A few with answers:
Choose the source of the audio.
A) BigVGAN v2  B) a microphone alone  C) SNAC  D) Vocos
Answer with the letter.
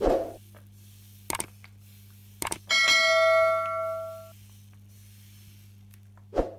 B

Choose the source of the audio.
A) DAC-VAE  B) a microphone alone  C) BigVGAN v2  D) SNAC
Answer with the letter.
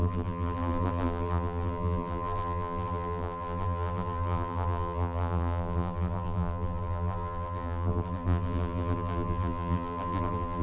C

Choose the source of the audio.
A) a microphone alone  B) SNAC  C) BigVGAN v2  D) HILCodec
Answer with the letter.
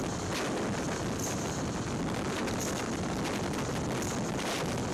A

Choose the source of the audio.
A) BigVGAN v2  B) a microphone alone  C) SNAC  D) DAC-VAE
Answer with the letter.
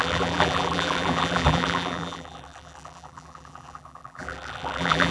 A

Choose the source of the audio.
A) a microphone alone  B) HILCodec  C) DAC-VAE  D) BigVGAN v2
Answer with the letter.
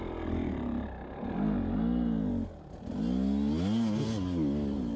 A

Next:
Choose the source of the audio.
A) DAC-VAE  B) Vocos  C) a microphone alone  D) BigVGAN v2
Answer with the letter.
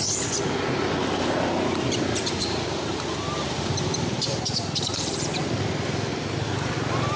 D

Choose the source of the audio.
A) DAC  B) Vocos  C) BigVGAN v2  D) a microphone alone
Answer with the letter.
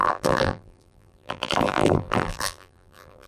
C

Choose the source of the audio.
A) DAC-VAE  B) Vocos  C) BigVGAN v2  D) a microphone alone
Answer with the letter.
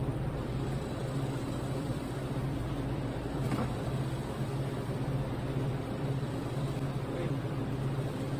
C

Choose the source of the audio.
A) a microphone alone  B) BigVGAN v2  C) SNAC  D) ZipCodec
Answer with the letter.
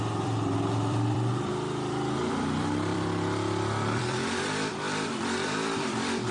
B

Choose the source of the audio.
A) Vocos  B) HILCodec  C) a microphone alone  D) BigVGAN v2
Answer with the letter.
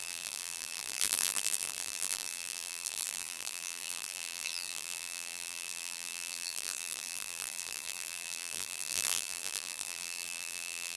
D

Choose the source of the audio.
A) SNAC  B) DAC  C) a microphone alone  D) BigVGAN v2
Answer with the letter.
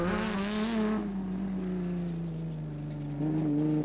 C